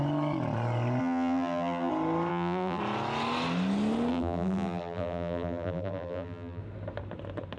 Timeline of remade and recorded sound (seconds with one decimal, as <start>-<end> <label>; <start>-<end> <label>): 0.0-1.0 recorded; 1.0-1.9 remade; 1.9-2.3 recorded; 2.3-2.8 remade; 2.8-4.1 recorded; 4.1-6.6 remade; 6.6-7.6 recorded